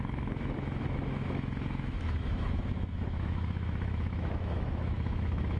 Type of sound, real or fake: fake